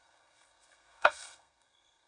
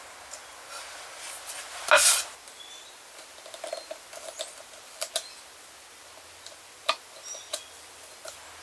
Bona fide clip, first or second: second